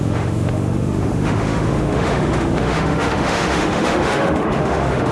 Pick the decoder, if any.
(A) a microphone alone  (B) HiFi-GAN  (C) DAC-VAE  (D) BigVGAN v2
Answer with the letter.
C